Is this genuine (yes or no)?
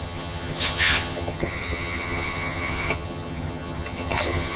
no